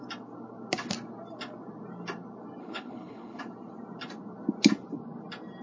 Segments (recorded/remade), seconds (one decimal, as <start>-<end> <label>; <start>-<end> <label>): 0.0-2.6 recorded; 2.6-3.4 remade; 3.4-5.6 recorded